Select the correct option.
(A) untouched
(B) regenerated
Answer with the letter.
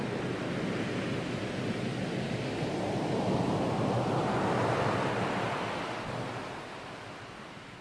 A